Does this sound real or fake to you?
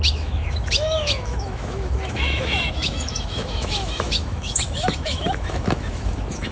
fake